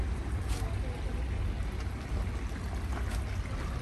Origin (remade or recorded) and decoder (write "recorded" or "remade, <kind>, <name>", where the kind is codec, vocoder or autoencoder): recorded